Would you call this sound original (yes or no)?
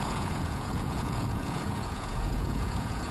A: no